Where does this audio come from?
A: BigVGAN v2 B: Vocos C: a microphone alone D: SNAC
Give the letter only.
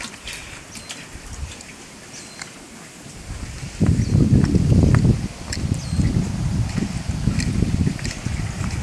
C